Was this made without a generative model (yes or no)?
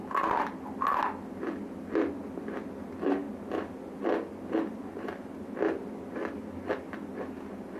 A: yes